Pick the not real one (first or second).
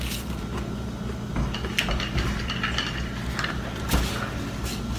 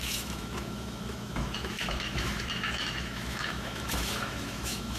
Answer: second